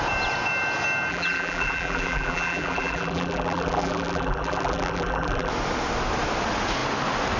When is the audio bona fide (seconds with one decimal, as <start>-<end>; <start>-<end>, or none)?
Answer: 0.0-1.1; 5.5-7.4